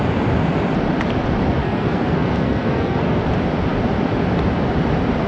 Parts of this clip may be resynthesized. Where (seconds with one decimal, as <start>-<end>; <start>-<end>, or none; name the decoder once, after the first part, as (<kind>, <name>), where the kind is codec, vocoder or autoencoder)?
1.6-3.2 (codec, SNAC)